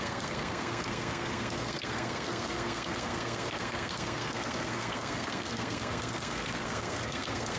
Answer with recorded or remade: remade